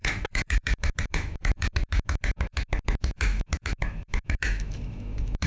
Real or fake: fake